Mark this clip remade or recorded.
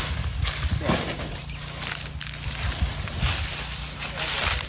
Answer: recorded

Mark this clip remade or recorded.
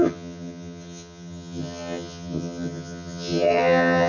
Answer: remade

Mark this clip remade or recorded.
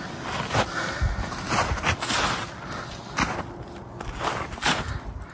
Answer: recorded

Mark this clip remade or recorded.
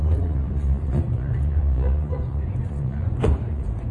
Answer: remade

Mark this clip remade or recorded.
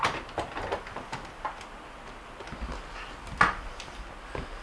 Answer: recorded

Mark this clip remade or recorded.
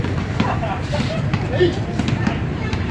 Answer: remade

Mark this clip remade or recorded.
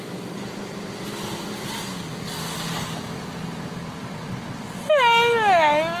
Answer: recorded